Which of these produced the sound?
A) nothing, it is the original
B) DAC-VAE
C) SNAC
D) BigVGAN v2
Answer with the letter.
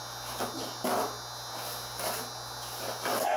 A